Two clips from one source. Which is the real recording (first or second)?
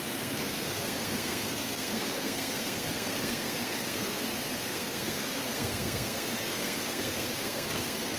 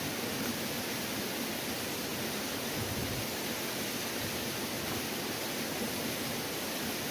second